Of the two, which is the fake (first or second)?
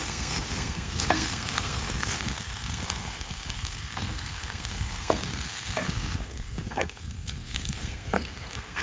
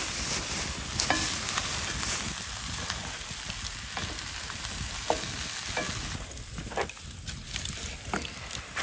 first